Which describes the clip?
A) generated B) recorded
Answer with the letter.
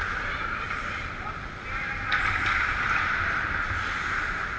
B